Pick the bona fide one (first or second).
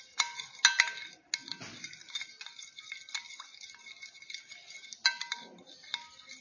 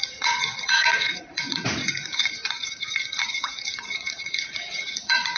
first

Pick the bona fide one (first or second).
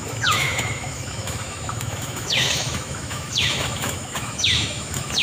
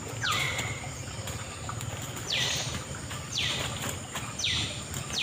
second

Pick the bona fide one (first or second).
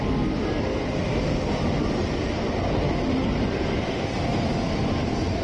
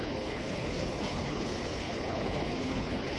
first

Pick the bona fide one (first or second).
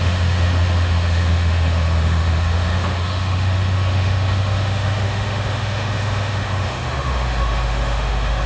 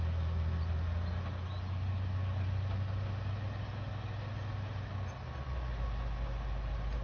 second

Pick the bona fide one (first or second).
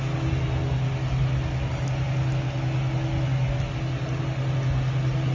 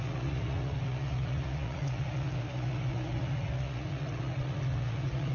first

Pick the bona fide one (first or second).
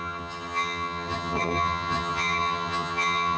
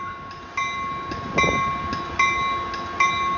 second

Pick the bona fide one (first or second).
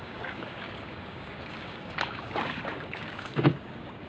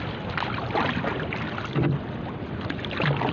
second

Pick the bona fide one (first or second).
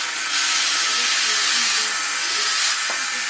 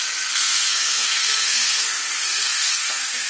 first